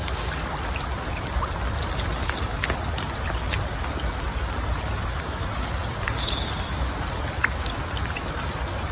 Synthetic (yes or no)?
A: no